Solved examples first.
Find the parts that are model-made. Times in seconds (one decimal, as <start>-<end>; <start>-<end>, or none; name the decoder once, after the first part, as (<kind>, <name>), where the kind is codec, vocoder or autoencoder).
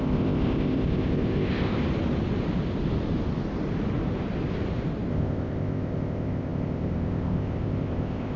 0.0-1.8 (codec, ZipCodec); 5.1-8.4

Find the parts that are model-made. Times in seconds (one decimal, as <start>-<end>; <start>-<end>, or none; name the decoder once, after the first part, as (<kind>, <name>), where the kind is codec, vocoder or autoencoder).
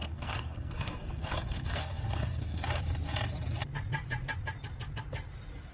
0.0-2.8 (codec, SNAC)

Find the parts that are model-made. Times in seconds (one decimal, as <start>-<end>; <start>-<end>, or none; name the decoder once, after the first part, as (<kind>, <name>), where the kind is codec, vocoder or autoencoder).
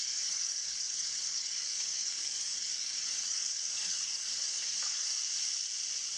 0.0-5.2 (codec, DAC)